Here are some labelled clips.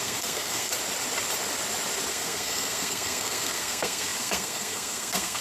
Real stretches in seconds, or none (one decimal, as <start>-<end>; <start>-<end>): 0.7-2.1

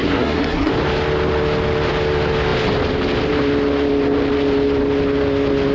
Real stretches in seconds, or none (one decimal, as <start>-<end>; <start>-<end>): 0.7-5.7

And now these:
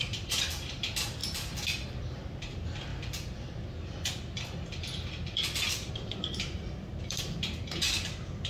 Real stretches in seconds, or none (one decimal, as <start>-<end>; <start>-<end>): 1.2-2.1; 2.9-5.9

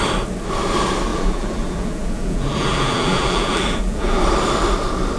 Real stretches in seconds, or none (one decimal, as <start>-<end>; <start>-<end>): 0.0-1.1; 4.2-5.2

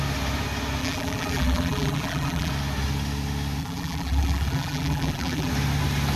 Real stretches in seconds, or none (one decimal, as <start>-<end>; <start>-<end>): 0.0-0.8; 2.5-3.6; 5.5-6.2

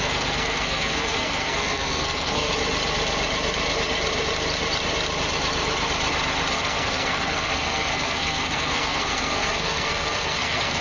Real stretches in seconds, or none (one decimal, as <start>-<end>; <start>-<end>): 2.5-6.5

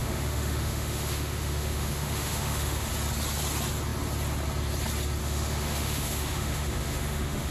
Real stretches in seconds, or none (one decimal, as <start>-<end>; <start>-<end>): 2.9-5.2

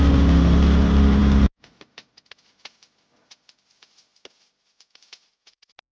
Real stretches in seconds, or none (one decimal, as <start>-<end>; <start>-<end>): 0.0-5.9